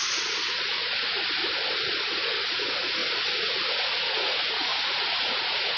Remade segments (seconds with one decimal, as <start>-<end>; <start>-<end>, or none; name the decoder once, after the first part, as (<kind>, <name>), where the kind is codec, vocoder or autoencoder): 0.0-1.4 (vocoder, Vocos); 2.1-3.0; 3.7-5.8